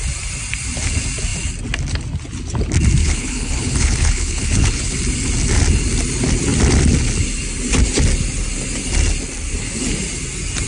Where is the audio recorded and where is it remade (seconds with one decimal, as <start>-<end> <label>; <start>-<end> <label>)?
0.0-3.0 recorded; 3.0-5.0 remade; 5.0-10.7 recorded